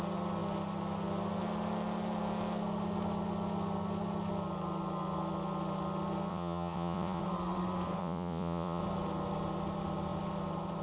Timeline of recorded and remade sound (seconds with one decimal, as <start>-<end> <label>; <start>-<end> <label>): 0.0-6.3 recorded; 6.3-7.2 remade; 7.2-8.0 recorded; 8.0-8.8 remade; 8.8-10.8 recorded